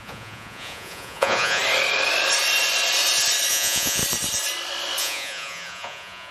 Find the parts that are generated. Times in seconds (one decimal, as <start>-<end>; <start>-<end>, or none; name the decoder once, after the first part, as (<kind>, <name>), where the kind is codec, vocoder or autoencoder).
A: 0.0-1.6 (vocoder, Vocos); 3.5-4.0; 5.0-6.3